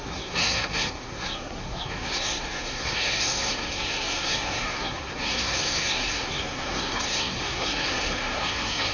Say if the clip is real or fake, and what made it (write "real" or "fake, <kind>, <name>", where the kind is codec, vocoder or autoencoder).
fake, codec, SNAC